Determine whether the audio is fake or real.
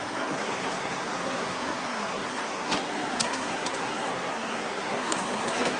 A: fake